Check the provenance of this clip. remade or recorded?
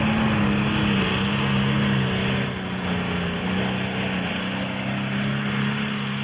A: recorded